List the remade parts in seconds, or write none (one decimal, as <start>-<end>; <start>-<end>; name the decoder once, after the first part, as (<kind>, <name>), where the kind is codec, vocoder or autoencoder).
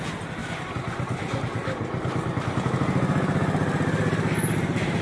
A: none